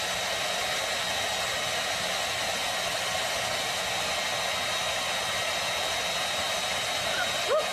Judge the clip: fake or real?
real